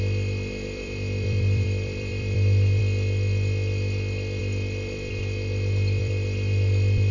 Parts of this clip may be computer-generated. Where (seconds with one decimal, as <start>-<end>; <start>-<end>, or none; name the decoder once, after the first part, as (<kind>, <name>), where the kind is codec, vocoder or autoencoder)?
0.0-2.8 (vocoder, BigVGAN v2); 4.4-7.1